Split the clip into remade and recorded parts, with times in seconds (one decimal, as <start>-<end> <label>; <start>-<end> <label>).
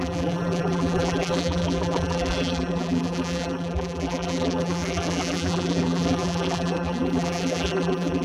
0.0-8.2 remade